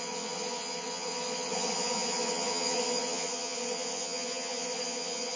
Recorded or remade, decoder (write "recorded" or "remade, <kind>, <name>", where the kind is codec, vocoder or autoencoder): remade, vocoder, HiFi-GAN